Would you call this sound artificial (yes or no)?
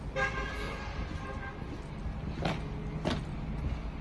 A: no